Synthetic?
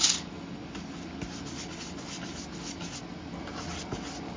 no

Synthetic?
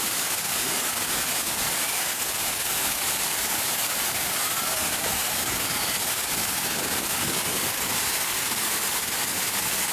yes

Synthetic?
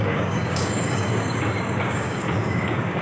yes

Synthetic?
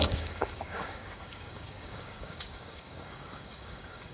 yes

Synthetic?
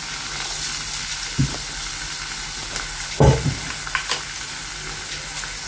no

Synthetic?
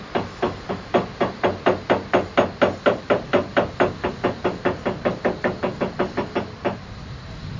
no